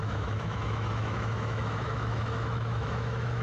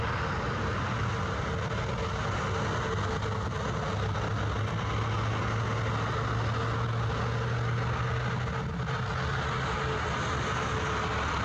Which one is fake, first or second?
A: first